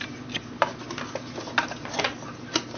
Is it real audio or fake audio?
real